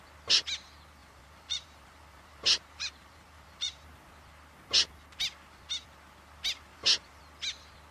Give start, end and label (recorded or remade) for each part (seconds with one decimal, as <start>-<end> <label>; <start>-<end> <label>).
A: 0.0-1.0 recorded; 1.0-4.1 remade; 4.1-6.7 recorded; 6.7-7.2 remade; 7.2-7.9 recorded